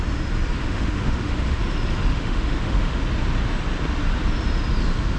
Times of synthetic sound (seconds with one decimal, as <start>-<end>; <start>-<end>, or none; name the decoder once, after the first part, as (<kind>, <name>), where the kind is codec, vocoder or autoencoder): 0.6-1.6 (autoencoder, DAC-VAE); 2.1-3.0